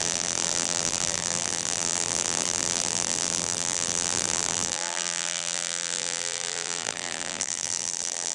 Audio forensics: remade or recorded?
remade